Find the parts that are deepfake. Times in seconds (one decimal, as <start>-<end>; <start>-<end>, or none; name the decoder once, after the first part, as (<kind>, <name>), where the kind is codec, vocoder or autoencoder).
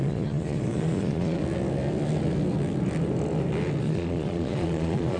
0.0-1.4 (vocoder, Vocos); 3.8-5.2